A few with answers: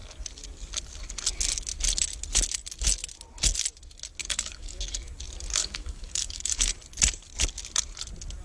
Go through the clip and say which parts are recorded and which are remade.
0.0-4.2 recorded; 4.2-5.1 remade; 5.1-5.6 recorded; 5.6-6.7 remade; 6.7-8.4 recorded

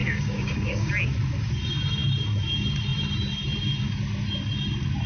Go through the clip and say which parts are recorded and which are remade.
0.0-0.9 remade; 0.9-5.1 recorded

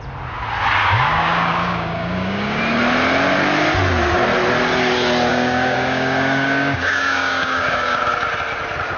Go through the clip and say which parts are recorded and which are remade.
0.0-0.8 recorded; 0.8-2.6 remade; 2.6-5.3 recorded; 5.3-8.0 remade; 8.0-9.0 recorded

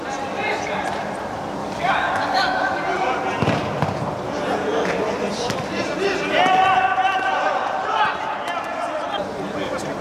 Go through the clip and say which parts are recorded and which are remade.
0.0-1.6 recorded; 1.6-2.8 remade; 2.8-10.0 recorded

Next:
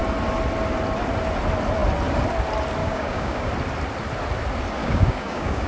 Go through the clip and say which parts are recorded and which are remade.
0.0-2.8 recorded; 2.8-3.5 remade; 3.5-4.8 recorded; 4.8-5.7 remade

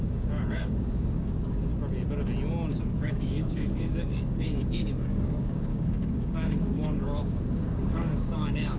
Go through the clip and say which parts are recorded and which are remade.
0.0-1.7 remade; 1.7-2.7 recorded; 2.7-8.8 remade

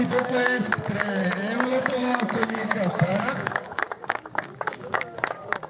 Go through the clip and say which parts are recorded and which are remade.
0.0-1.2 remade; 1.2-1.7 recorded; 1.7-5.7 remade